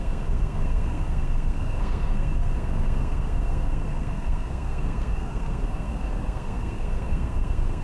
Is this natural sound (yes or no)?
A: no